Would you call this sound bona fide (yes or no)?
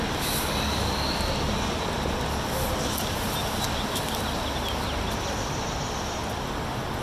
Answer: yes